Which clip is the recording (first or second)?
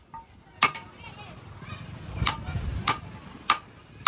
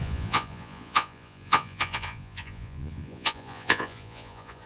first